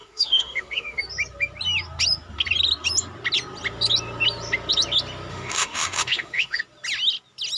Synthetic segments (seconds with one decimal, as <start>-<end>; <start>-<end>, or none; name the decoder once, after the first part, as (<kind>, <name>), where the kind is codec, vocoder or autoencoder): 0.0-1.0 (autoencoder, DAC-VAE); 5.3-6.6